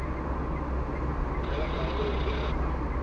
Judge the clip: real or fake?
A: real